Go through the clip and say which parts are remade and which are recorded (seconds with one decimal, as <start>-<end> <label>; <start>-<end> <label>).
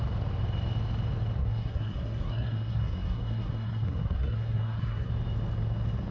0.0-1.4 recorded; 1.4-5.1 remade; 5.1-6.1 recorded